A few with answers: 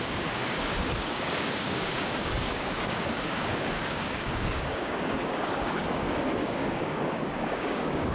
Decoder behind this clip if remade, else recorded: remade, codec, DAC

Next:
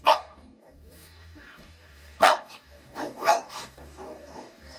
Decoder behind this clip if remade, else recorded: remade, codec, DAC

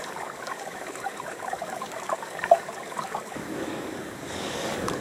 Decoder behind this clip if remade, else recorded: remade, codec, DAC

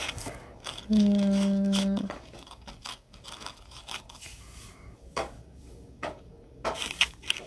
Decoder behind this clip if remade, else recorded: remade, codec, DAC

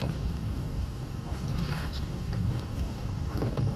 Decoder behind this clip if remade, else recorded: remade, codec, DAC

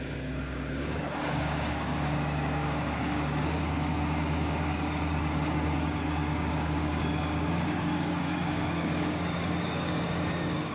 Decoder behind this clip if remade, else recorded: remade, codec, DAC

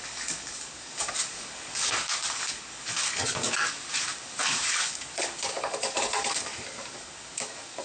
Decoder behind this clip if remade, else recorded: remade, codec, DAC